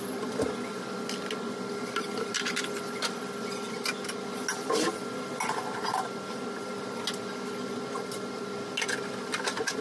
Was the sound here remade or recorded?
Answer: recorded